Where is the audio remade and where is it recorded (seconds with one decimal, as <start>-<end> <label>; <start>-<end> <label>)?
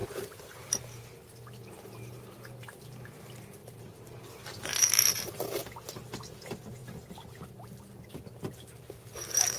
0.0-5.6 remade; 5.6-6.3 recorded; 6.3-9.6 remade